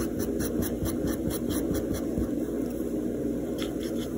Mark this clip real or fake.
real